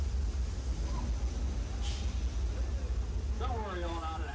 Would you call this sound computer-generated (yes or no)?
no